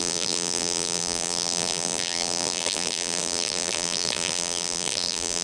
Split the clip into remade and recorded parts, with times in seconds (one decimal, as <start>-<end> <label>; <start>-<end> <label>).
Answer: 0.0-5.4 remade